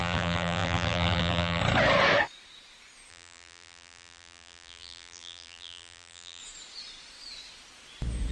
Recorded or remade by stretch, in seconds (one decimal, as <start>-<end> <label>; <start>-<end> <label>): 0.0-1.6 remade; 1.6-3.1 recorded; 3.1-6.4 remade; 6.4-8.3 recorded